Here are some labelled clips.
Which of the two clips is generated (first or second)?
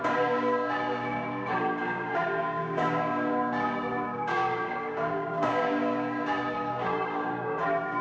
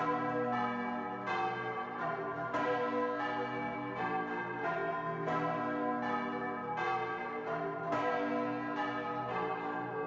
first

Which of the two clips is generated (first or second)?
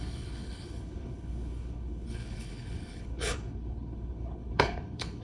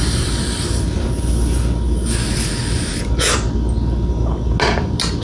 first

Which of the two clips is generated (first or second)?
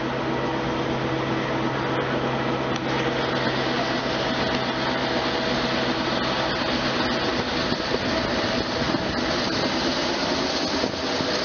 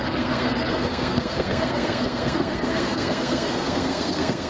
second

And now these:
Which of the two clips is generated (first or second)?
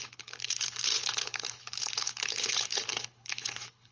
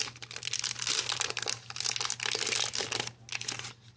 first